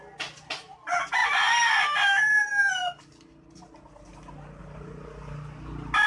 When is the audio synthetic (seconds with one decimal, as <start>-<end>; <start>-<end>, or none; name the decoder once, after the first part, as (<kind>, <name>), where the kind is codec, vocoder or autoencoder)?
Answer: none